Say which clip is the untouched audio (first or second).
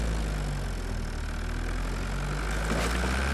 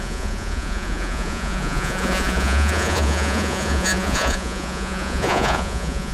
first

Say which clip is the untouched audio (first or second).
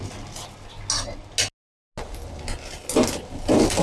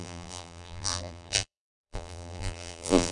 first